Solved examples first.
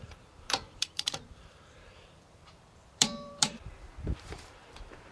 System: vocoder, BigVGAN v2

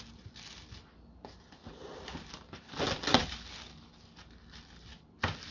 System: none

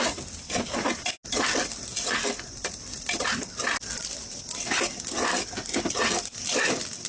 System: none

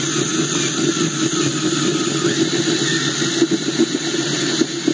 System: none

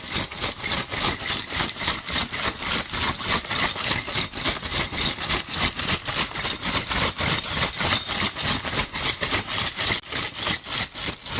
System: none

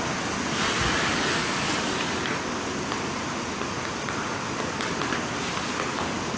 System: none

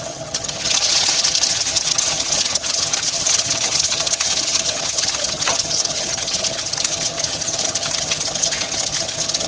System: vocoder, HiFi-GAN